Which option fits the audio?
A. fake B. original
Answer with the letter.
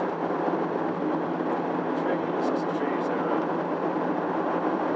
B